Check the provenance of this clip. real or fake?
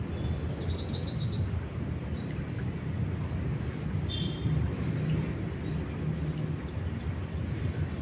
real